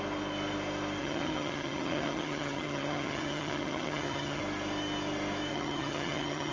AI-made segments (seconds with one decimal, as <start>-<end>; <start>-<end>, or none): 1.0-4.4; 5.5-6.5